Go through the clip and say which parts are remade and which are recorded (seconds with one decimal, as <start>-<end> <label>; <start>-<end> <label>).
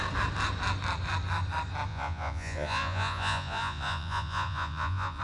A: 0.0-1.9 recorded; 1.9-5.2 remade